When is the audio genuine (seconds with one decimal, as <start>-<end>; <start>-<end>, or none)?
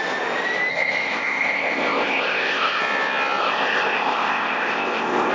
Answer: 0.0-0.7; 2.8-3.4